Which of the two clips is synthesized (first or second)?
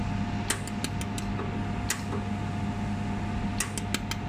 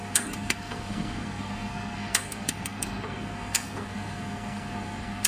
second